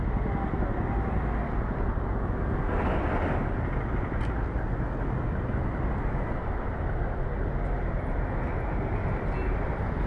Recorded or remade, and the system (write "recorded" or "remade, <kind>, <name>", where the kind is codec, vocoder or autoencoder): recorded